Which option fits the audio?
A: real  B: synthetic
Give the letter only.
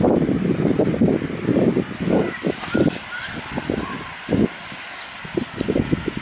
A